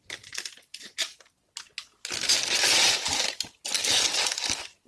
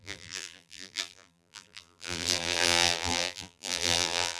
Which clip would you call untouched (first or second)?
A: first